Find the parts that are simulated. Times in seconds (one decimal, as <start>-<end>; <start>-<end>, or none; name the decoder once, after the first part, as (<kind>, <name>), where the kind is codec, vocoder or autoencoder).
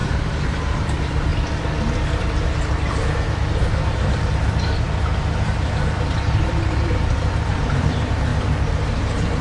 0.0-1.3 (vocoder, BigVGAN v2); 3.6-8.3; 9.0-9.4